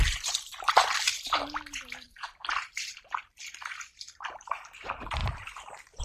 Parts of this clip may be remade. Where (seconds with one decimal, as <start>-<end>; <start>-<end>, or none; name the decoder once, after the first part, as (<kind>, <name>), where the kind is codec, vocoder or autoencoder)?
0.0-5.2 (vocoder, BigVGAN v2)